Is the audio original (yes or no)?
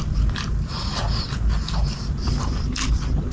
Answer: yes